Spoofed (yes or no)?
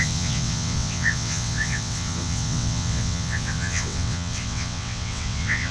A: yes